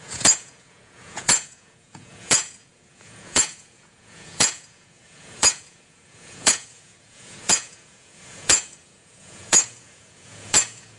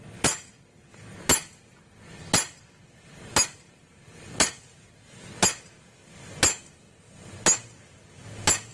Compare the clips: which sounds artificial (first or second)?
first